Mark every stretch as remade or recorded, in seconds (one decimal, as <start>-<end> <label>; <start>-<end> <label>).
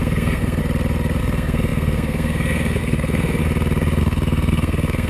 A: 0.0-0.6 remade; 0.6-1.2 recorded; 1.2-3.4 remade; 3.4-4.0 recorded; 4.0-5.1 remade